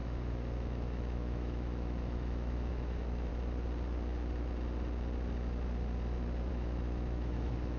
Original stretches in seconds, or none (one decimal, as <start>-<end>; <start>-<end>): 3.3-6.5